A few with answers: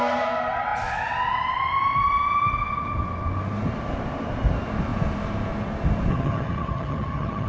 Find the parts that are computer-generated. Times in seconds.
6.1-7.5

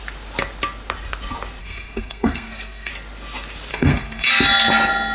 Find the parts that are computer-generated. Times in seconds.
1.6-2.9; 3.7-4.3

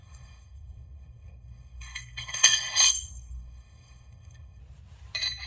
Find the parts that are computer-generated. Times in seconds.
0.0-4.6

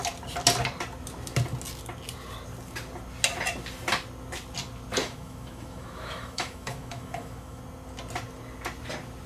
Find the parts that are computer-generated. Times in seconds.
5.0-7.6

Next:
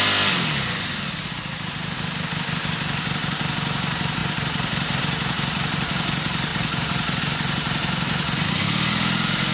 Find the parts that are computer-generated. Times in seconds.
4.2-5.0; 6.5-7.2

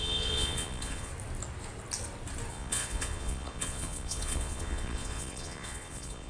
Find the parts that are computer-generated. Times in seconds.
0.0-1.1; 2.5-6.3

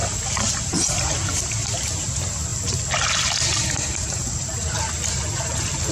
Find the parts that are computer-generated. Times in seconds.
none

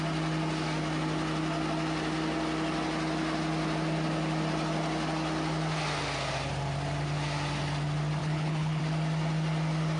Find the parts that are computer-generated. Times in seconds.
8.2-8.8